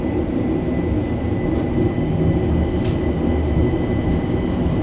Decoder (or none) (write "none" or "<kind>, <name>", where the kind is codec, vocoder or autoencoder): none